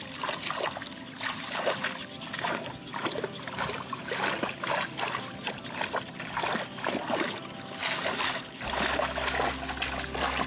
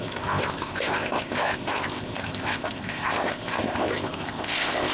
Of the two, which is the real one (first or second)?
first